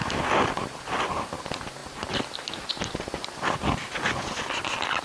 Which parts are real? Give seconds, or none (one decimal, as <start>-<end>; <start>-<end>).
0.0-5.0